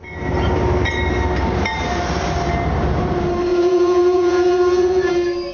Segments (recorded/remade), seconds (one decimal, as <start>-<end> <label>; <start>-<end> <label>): 0.0-3.5 recorded; 3.5-5.1 remade; 5.1-5.5 recorded